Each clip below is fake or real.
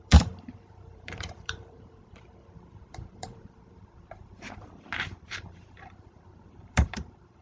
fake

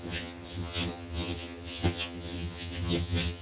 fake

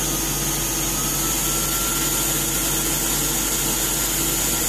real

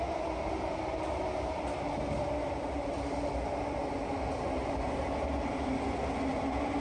real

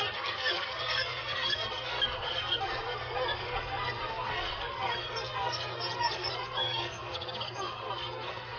fake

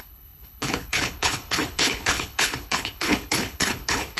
fake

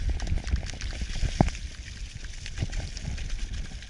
real